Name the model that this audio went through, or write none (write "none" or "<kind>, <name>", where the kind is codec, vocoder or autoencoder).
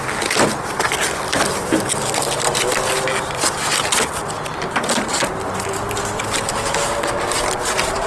none